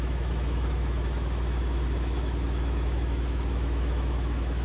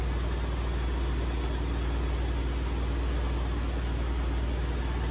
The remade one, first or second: first